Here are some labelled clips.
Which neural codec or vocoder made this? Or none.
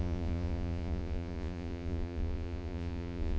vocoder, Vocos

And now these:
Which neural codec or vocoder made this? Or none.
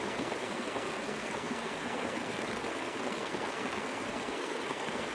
codec, SNAC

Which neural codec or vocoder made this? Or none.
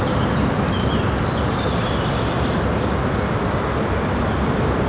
none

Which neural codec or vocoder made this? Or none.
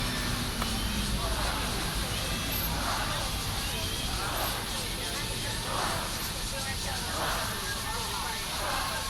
none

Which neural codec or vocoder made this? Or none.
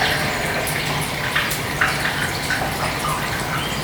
none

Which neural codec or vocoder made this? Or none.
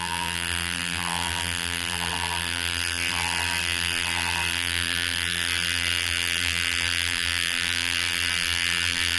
vocoder, BigVGAN v2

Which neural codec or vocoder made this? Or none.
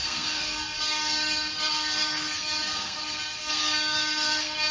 codec, SNAC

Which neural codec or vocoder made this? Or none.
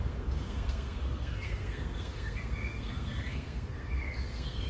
codec, SNAC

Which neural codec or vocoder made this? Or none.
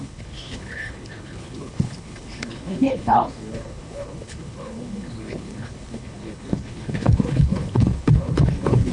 codec, HILCodec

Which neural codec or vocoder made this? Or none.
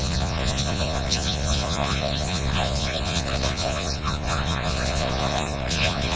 vocoder, Vocos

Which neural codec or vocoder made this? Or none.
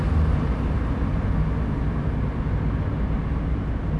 none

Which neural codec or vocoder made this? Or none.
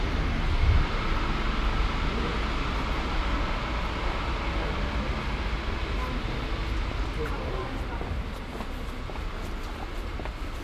none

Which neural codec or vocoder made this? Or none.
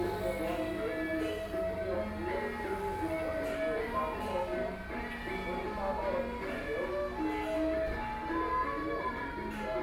none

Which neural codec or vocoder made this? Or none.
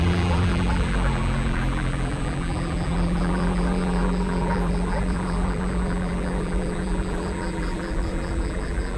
vocoder, BigVGAN v2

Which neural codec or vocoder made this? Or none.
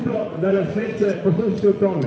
vocoder, Vocos